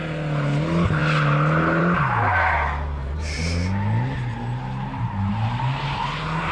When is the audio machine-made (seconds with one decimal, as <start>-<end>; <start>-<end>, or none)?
none